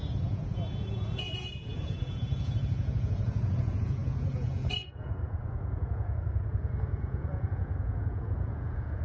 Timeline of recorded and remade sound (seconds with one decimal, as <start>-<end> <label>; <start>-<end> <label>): 0.0-9.0 remade